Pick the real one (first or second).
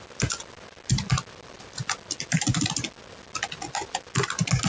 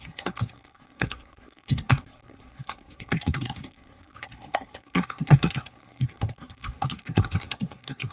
first